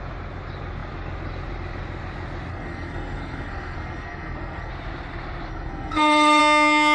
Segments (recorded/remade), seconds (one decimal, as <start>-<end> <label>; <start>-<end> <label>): 0.0-2.5 recorded; 2.5-4.7 remade; 4.7-5.5 recorded; 5.5-6.4 remade; 6.4-6.9 recorded